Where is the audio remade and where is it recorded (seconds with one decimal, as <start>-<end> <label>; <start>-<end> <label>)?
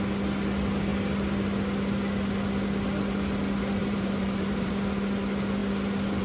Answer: 0.0-3.8 recorded; 3.8-4.7 remade; 4.7-6.2 recorded